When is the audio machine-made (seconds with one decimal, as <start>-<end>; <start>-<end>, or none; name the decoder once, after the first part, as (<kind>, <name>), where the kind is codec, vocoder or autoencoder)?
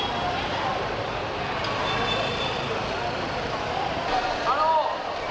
0.0-0.7 (vocoder, BigVGAN v2); 3.8-5.3